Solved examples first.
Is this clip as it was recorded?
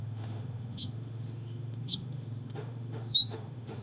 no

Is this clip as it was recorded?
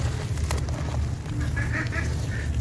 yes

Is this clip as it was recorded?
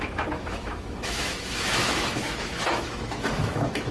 no